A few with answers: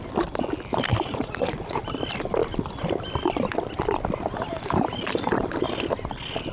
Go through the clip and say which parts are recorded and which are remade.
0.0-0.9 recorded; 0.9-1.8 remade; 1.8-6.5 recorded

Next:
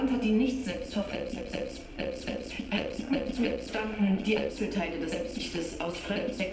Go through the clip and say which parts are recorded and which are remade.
0.0-0.6 recorded; 0.6-4.5 remade; 4.5-5.3 recorded; 5.3-6.1 remade; 6.1-6.5 recorded

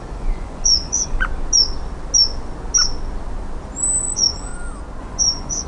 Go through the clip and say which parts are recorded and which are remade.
0.0-1.3 remade; 1.3-4.0 recorded; 4.0-4.5 remade; 4.5-5.0 recorded; 5.0-5.7 remade

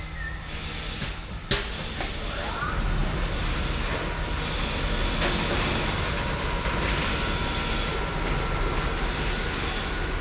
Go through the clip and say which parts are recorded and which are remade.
0.0-10.2 recorded

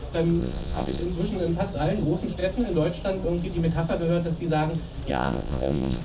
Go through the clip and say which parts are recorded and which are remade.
0.0-0.4 recorded; 0.4-1.0 remade; 1.0-5.1 recorded; 5.1-6.0 remade

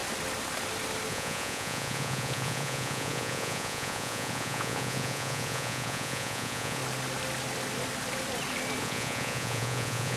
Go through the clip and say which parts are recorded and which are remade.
0.0-1.1 recorded; 1.1-6.8 remade; 6.8-8.8 recorded; 8.8-10.2 remade

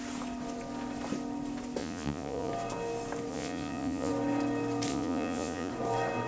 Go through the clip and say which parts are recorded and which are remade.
0.0-1.8 recorded; 1.8-2.5 remade; 2.5-3.3 recorded; 3.3-4.1 remade; 4.1-4.9 recorded; 4.9-5.7 remade; 5.7-6.3 recorded

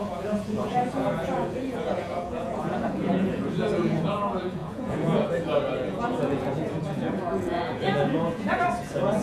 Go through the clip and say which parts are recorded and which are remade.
0.0-9.2 remade